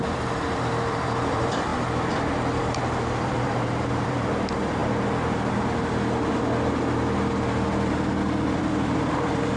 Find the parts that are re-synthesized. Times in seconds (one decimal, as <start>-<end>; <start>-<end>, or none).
0.0-1.7; 3.2-4.8; 8.6-9.6